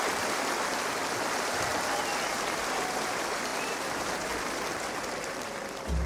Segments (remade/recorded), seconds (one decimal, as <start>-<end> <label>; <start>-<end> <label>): 0.0-1.7 remade; 1.7-2.3 recorded; 2.3-6.1 remade